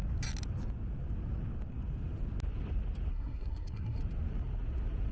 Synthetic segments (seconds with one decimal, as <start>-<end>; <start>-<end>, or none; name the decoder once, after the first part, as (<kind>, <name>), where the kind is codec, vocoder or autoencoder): 3.1-4.0 (codec, SNAC)